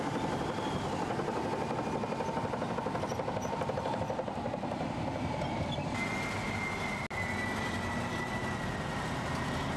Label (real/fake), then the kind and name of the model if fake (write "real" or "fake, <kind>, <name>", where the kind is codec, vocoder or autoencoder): real